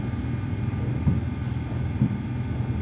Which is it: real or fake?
real